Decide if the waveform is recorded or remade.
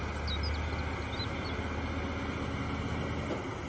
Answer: recorded